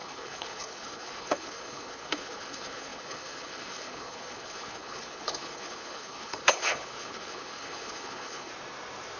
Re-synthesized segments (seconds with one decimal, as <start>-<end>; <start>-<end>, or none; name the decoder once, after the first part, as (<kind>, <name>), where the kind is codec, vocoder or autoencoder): 0.0-8.5 (codec, HILCodec)